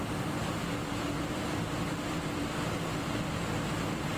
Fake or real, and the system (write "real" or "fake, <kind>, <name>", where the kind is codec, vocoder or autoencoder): real